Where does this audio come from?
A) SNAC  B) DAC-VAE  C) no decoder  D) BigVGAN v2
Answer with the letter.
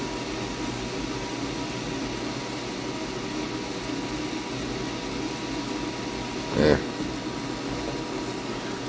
C